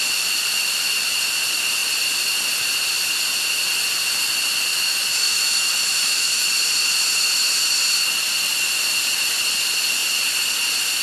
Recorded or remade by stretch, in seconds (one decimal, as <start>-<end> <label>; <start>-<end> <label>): 0.0-4.7 recorded; 4.7-6.5 remade; 6.5-11.0 recorded